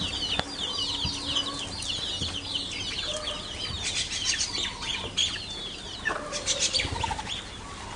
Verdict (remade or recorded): recorded